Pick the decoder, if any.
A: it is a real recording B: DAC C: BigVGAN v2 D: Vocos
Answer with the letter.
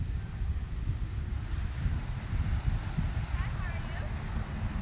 A